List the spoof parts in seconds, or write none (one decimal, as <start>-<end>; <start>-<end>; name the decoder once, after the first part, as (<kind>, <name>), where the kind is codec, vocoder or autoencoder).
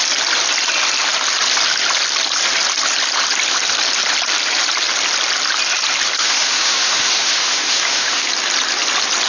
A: 6.2-8.3 (autoencoder, DAC-VAE)